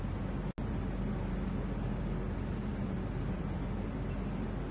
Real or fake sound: real